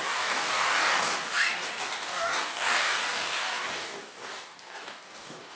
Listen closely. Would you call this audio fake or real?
fake